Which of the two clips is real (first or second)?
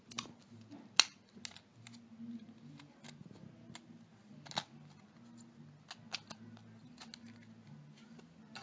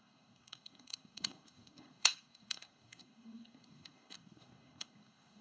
first